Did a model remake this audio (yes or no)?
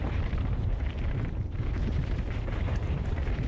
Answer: yes